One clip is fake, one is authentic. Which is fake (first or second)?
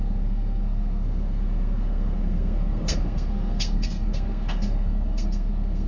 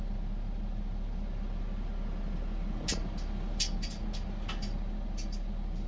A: first